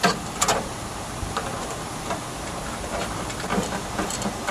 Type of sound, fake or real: fake